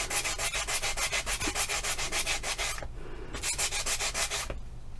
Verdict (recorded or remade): recorded